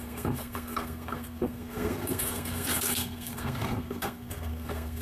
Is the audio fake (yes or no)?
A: yes